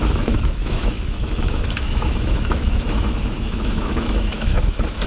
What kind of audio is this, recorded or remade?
remade